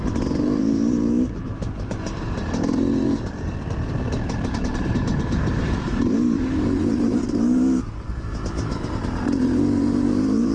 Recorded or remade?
remade